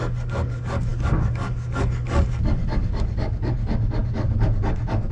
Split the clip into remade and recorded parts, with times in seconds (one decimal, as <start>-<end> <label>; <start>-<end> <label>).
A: 0.0-5.1 remade